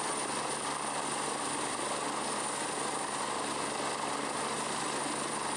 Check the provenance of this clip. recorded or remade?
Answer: recorded